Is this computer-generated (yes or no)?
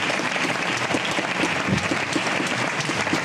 yes